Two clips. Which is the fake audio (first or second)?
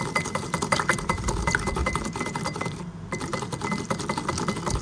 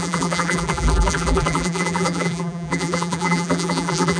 second